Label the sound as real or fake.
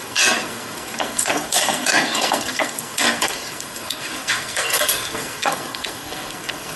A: fake